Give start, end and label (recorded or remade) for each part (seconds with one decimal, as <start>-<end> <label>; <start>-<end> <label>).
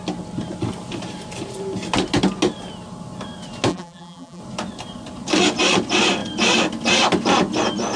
0.0-3.7 recorded; 3.7-4.4 remade; 4.4-8.0 recorded